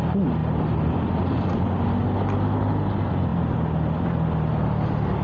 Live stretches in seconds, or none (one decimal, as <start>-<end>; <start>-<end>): 0.0-0.4; 1.2-5.2